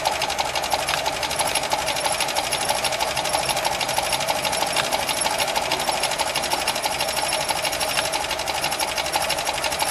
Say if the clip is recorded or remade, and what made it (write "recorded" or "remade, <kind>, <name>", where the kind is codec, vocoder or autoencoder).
recorded